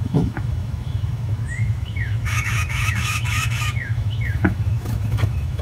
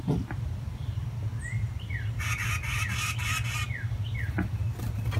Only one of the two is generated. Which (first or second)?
first